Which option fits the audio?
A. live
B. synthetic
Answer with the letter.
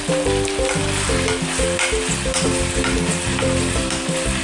A